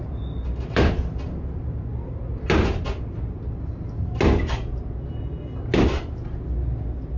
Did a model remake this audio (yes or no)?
no